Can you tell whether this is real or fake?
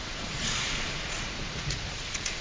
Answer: fake